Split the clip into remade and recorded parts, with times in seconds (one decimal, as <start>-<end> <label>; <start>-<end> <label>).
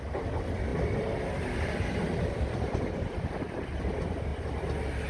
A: 0.0-4.3 remade; 4.3-5.1 recorded